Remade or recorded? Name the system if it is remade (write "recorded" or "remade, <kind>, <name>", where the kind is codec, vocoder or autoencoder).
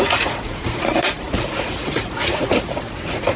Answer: remade, vocoder, Vocos